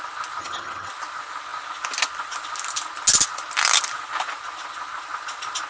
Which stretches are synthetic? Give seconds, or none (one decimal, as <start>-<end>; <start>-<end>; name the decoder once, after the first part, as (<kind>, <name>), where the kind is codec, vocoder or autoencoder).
0.4-0.9 (vocoder, HiFi-GAN)